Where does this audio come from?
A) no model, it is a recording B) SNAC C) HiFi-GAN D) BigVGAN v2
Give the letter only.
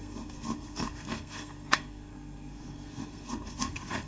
B